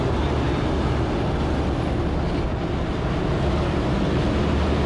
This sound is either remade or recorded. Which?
recorded